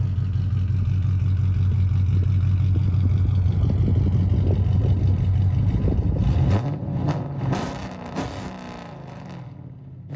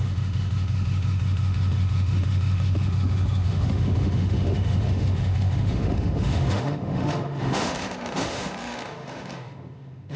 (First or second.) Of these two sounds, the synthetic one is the second